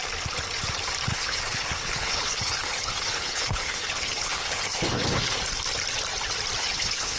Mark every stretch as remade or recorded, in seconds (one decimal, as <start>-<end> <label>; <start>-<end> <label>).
0.0-1.1 recorded; 1.1-5.4 remade; 5.4-6.6 recorded; 6.6-7.2 remade